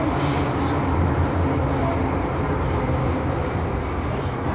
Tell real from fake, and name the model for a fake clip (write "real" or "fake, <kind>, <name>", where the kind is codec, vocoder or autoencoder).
real